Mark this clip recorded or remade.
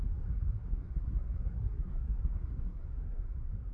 remade